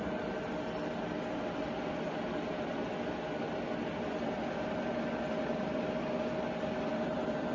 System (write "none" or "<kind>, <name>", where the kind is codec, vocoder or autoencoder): none